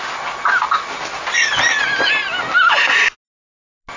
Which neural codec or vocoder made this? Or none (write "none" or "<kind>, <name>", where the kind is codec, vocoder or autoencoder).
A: none